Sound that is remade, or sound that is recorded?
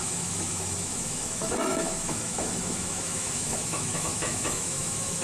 remade